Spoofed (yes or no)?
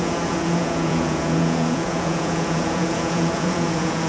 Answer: yes